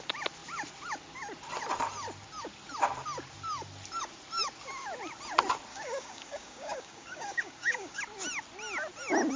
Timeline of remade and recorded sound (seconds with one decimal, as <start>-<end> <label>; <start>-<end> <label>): 0.0-5.7 recorded; 5.7-8.0 remade; 8.0-9.4 recorded